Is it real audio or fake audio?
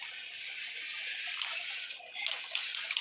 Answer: real